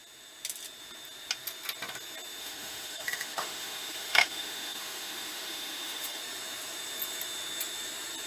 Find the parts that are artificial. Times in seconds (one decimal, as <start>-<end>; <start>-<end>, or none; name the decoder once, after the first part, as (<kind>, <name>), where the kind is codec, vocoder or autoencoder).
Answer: 2.4-6.2 (autoencoder, DAC-VAE)